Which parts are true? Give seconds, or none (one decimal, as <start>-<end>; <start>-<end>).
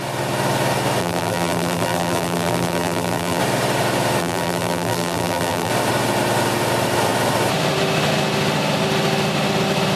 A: 0.0-1.0; 3.4-4.2; 5.7-10.0